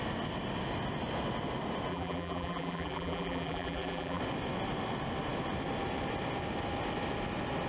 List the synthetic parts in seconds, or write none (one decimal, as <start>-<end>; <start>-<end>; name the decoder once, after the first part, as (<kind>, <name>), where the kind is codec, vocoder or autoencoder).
1.9-4.2 (vocoder, BigVGAN v2)